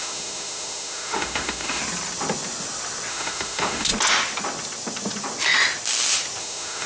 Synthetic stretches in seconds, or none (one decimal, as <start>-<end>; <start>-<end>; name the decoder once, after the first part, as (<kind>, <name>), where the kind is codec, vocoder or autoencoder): 0.0-1.8 (autoencoder, DAC-VAE); 3.1-3.9; 6.4-6.9